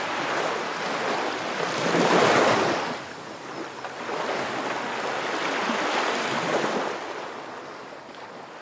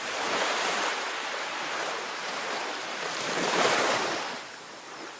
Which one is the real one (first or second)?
first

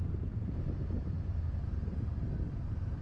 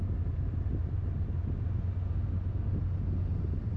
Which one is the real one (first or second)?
second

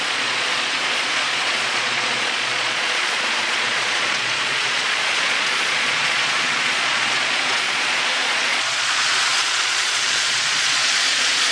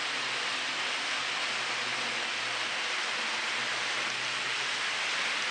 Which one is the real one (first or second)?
second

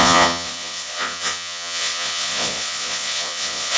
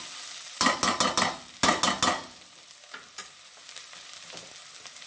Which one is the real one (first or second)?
second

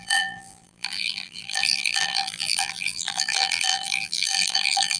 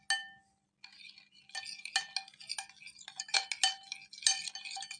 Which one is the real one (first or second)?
second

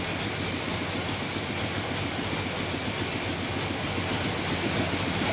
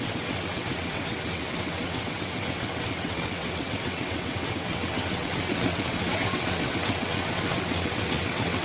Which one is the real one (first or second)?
first